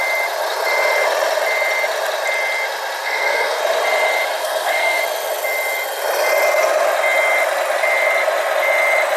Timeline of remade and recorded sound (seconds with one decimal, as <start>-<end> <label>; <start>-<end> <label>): 0.0-3.0 recorded; 3.0-3.6 remade; 3.6-4.4 recorded; 4.4-5.0 remade; 5.0-9.2 recorded